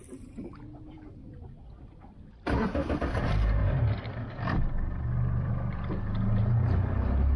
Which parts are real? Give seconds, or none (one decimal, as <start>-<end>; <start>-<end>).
3.1-3.6; 5.5-7.4